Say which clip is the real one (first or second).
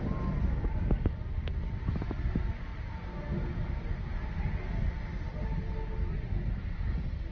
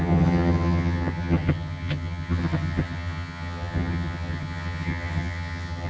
first